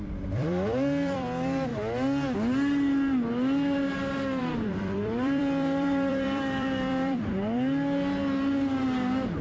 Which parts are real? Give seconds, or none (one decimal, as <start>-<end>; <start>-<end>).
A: 1.7-4.4; 7.3-9.4